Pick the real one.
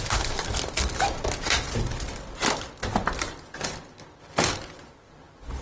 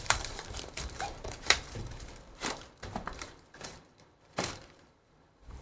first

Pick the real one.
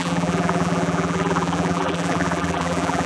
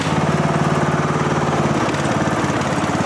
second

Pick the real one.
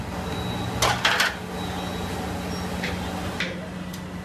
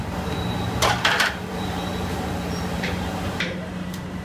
first